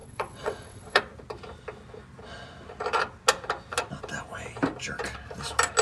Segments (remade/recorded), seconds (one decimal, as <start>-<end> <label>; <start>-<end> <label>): 0.0-1.0 remade; 1.0-5.8 recorded